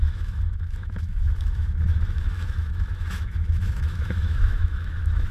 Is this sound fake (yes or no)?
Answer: yes